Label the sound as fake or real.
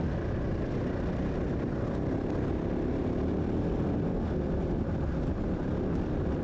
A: real